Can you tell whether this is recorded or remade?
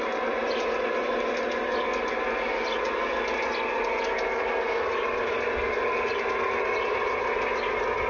recorded